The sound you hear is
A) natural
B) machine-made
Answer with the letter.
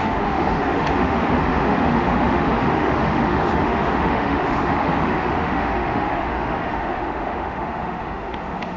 B